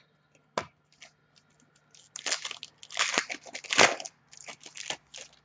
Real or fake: real